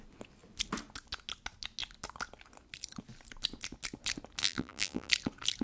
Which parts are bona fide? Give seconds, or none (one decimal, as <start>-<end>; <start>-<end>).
0.0-4.4; 5.1-5.6